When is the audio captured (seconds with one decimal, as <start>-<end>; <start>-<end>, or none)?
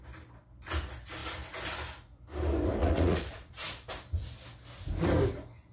0.0-2.8; 3.7-5.7